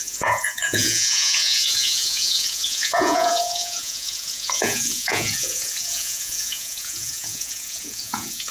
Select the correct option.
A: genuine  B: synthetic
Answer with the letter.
B